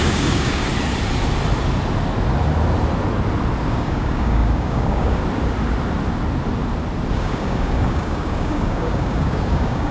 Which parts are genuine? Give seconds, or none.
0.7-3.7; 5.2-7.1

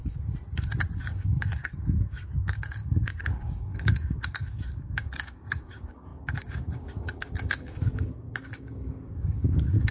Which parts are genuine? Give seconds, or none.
0.0-1.0

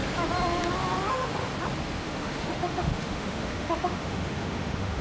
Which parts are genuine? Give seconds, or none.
0.0-1.1; 1.5-2.0

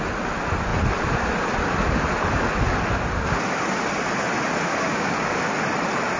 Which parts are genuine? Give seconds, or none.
0.0-4.7; 5.4-6.2

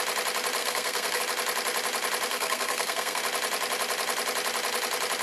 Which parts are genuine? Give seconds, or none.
0.0-0.6; 1.2-2.3; 3.2-5.2

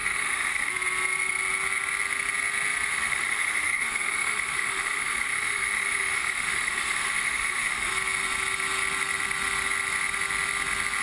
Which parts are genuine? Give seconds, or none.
0.7-2.9; 7.9-11.0

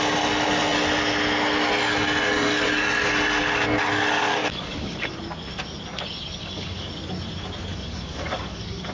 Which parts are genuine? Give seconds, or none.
0.0-4.4; 5.2-6.4; 6.9-7.7

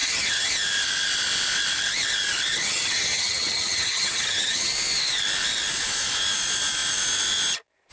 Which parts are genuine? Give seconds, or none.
0.5-2.5; 4.7-7.9